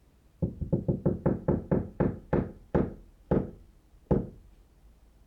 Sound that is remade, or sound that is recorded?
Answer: remade